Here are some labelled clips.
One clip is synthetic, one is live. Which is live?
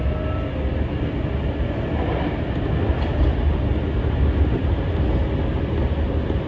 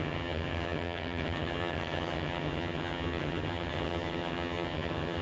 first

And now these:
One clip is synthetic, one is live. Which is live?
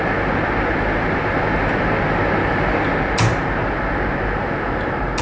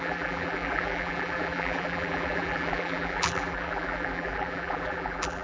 first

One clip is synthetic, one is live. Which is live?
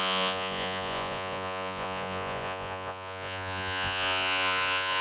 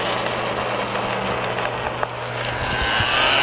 second